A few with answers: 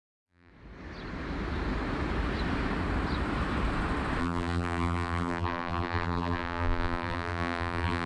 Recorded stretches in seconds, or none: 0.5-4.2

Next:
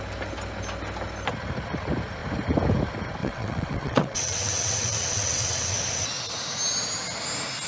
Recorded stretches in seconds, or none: 0.0-3.2; 5.7-7.7

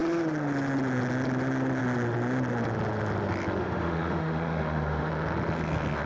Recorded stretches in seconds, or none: 0.0-3.6; 5.1-6.1

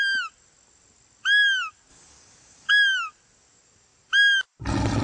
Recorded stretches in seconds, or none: 0.0-1.9; 2.7-5.0

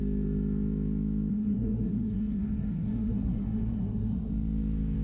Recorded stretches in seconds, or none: 0.0-1.3; 4.3-5.0

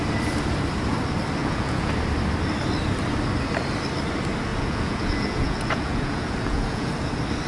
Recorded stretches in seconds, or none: 0.0-1.4; 1.9-4.5; 6.9-7.5

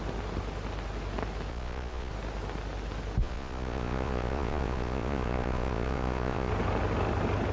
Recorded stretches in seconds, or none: 0.0-1.5; 2.1-3.2; 6.5-7.5

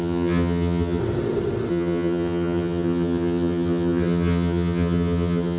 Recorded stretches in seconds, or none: 1.0-1.7